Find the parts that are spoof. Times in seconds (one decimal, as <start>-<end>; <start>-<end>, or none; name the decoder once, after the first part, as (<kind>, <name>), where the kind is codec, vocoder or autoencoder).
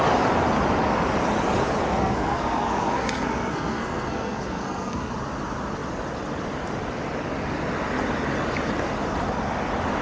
1.9-5.1 (codec, SNAC)